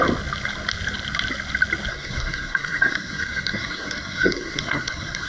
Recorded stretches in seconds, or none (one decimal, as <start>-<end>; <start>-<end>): 0.0-1.9